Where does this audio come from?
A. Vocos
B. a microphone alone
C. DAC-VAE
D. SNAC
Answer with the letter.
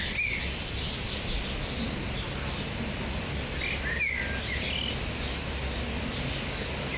B